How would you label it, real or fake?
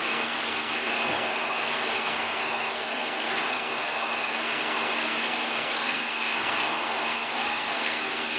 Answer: fake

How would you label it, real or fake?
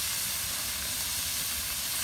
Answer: real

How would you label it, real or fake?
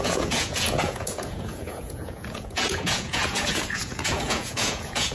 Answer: fake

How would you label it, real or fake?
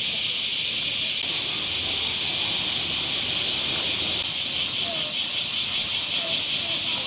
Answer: real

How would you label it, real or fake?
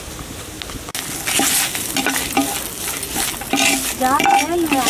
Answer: real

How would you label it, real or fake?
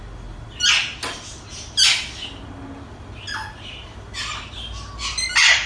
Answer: real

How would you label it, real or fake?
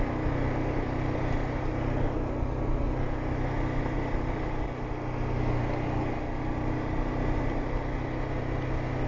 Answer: real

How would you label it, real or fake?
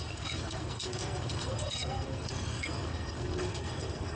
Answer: fake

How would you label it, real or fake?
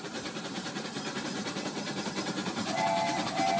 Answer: fake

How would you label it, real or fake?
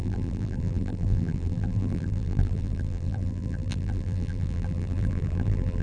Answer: fake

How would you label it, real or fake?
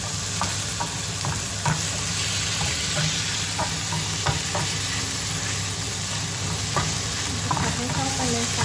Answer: real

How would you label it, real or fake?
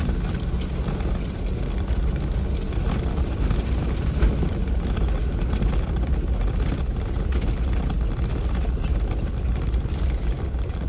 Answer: real